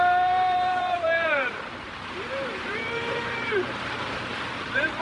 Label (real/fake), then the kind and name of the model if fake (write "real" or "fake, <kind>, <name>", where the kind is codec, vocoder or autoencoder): fake, vocoder, BigVGAN v2